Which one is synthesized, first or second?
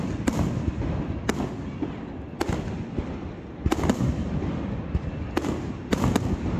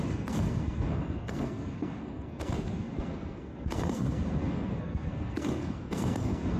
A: second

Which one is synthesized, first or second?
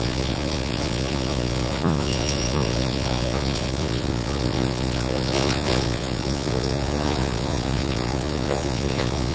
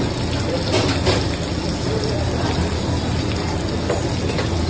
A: first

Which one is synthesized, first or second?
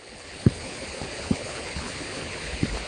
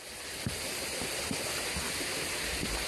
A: first